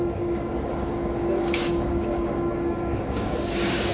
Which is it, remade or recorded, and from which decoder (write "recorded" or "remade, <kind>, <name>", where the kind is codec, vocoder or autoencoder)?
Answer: remade, codec, DAC